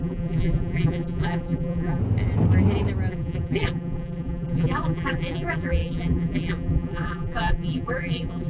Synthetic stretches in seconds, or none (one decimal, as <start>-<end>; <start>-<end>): 0.0-2.0; 3.1-8.5